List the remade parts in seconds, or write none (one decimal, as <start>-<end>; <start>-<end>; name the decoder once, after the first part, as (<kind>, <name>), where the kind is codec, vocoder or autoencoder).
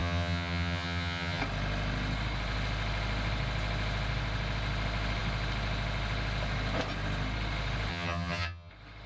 0.0-1.4 (vocoder, HiFi-GAN); 7.9-8.7